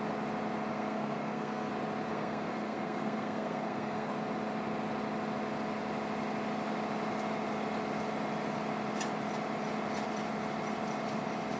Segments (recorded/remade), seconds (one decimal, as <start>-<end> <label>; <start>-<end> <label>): 0.0-0.7 recorded; 0.7-1.7 remade; 1.7-2.1 recorded; 2.1-4.1 remade; 4.1-11.6 recorded